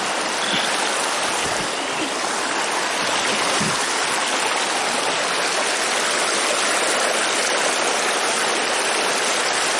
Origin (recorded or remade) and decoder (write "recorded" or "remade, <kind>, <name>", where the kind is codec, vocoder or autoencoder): recorded